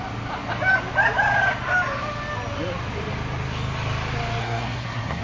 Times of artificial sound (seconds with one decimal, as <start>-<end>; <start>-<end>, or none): 4.4-5.2